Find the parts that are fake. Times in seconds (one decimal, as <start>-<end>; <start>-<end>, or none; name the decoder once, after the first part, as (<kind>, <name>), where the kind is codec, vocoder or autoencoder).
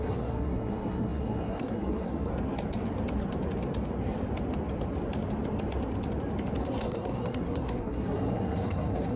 0.0-2.3 (codec, SNAC); 6.6-9.2